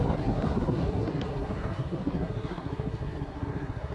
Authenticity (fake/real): fake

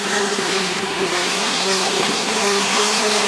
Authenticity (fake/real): fake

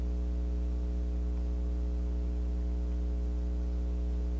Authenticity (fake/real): real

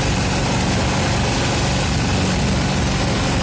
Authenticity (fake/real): real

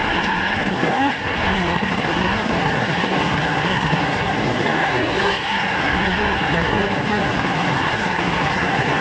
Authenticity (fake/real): fake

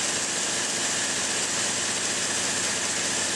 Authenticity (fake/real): real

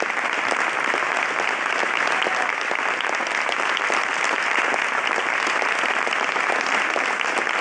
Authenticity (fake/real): real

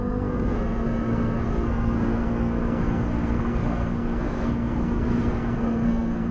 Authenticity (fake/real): fake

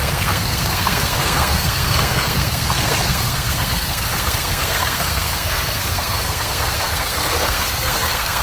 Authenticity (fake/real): fake